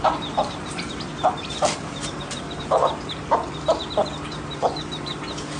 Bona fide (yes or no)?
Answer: no